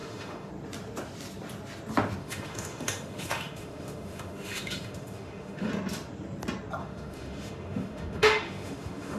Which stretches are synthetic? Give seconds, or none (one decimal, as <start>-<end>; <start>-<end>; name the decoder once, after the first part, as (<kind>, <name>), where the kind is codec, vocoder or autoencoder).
0.0-0.5 (autoencoder, DAC-VAE); 2.2-5.7; 6.8-9.2